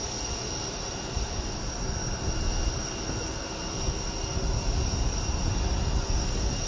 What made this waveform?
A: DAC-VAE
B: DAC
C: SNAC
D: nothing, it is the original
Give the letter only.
D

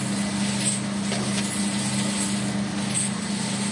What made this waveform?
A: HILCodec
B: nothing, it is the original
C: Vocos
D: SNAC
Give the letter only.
B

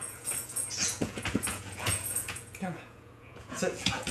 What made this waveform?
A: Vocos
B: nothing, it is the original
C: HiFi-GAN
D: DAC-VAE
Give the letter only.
A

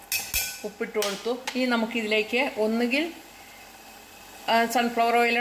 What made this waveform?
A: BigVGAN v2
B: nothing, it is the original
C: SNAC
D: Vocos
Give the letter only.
B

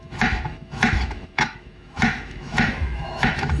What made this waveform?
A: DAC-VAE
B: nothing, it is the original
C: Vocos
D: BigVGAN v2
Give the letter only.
A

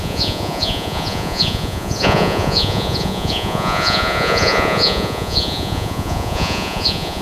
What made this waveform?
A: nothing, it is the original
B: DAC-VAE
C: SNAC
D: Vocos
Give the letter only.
D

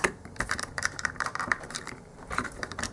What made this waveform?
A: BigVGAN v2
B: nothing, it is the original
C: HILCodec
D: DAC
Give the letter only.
A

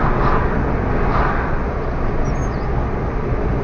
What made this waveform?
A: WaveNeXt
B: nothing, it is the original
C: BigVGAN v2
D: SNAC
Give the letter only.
B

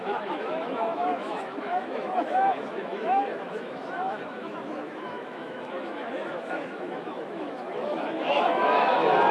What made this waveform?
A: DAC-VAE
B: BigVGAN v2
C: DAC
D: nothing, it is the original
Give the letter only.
A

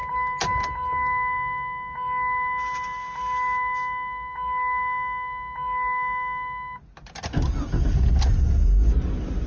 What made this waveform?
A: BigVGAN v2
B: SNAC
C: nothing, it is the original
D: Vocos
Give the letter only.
C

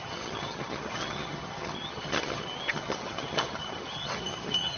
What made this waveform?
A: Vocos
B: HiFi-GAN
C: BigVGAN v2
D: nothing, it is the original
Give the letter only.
B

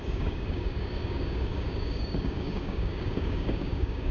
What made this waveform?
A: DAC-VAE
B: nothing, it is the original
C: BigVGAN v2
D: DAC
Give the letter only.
D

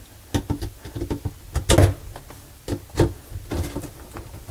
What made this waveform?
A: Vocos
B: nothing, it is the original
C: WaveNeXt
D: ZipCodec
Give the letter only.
B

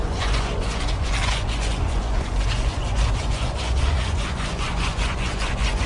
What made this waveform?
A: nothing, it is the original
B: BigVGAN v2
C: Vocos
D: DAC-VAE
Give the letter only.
C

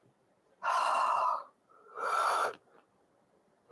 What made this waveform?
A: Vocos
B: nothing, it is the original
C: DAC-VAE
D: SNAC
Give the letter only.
B